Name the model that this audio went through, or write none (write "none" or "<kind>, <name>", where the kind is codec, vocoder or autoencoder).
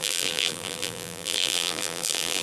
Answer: vocoder, BigVGAN v2